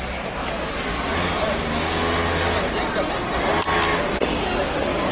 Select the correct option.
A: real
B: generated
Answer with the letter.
A